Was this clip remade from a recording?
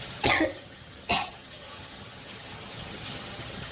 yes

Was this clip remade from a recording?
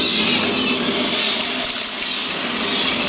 no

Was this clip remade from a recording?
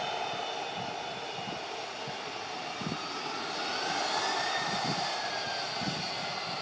no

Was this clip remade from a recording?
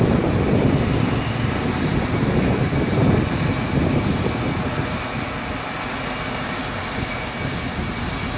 no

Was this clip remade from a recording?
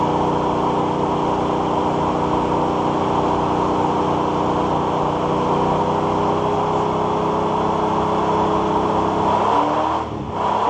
no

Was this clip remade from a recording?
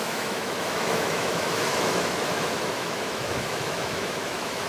yes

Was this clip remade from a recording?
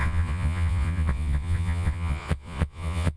yes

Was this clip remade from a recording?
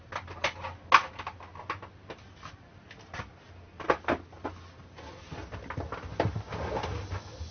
no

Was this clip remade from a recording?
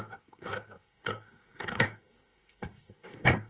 yes